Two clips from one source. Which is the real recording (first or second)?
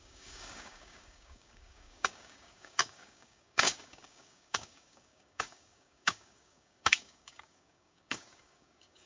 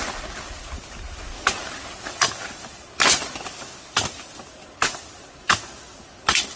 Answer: second